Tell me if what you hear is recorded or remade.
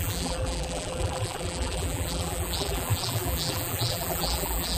remade